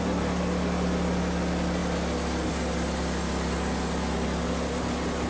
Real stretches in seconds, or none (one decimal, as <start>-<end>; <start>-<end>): 0.0-5.3